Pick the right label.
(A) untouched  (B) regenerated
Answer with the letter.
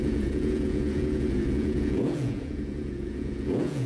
B